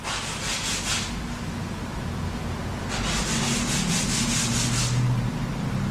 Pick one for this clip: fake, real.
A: real